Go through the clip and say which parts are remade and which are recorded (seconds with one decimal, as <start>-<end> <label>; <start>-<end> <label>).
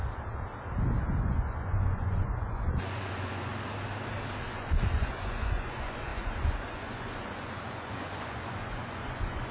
0.0-1.2 recorded; 1.2-3.5 remade; 3.5-4.4 recorded; 4.4-9.5 remade